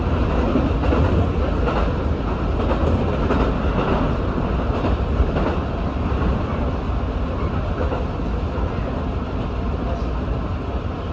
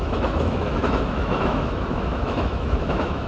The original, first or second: first